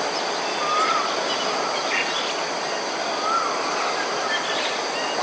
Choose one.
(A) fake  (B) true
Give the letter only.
B